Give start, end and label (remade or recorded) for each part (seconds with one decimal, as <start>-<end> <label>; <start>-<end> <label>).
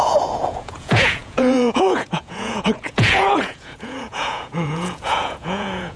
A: 0.0-6.0 remade